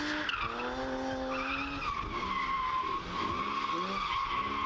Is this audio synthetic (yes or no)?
no